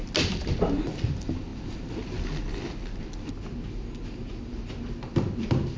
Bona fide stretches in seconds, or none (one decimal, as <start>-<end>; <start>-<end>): 0.0-5.8